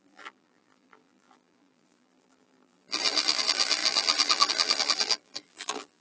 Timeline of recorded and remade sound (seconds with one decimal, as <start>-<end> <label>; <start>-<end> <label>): 0.0-6.0 remade